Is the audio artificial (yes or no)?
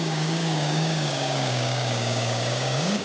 yes